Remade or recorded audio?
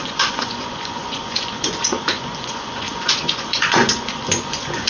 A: remade